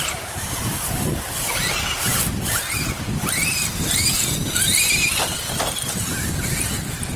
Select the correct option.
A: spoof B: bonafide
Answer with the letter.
B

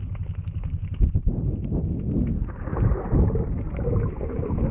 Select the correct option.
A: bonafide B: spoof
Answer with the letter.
A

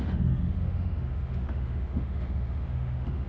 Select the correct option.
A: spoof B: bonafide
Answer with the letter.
A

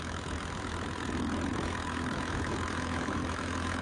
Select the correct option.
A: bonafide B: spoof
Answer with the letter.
B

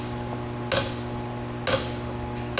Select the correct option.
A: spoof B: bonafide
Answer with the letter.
B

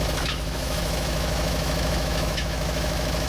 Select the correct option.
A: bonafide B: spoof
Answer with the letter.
B